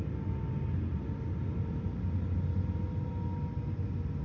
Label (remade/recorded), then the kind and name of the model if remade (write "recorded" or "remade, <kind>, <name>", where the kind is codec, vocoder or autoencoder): recorded